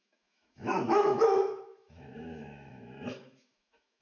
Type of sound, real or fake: fake